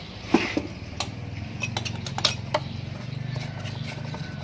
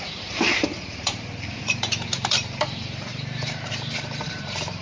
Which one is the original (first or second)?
first